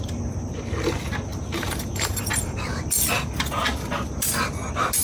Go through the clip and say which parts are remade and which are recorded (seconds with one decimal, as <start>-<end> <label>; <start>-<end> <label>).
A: 0.0-1.3 recorded; 1.3-2.2 remade; 2.2-5.0 recorded